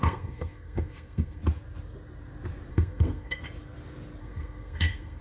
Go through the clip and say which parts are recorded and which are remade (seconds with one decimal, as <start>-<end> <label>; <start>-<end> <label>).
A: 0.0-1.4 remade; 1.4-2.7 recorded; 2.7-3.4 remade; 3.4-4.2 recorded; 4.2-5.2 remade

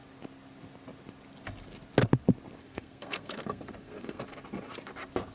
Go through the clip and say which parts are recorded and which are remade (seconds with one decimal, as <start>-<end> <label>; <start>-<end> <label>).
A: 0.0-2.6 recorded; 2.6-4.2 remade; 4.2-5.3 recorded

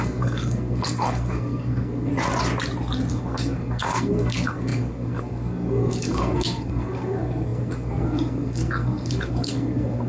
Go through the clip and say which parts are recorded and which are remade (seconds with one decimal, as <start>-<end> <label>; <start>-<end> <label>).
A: 0.0-2.1 remade; 2.1-3.1 recorded; 3.1-10.1 remade

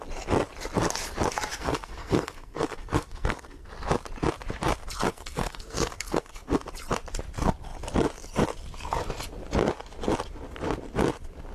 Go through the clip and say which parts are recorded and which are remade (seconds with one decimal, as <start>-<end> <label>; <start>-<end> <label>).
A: 0.0-1.5 recorded; 1.5-3.7 remade; 3.7-5.1 recorded; 5.1-6.5 remade; 6.5-11.5 recorded

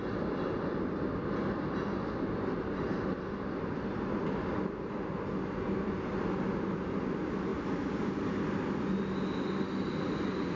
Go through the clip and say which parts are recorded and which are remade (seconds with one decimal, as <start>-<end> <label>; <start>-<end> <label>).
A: 0.0-10.6 recorded